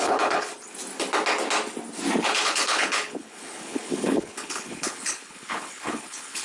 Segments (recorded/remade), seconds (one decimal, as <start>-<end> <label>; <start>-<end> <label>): 0.0-0.5 remade; 0.5-2.2 recorded; 2.2-6.4 remade